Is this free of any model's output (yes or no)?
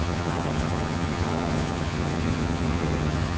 no